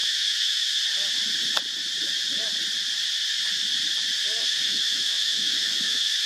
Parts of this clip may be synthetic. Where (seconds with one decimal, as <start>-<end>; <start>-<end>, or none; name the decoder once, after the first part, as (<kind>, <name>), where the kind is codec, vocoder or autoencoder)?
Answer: 0.0-0.8 (autoencoder, DAC-VAE); 4.4-6.3